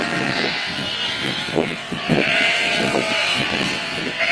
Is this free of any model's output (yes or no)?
no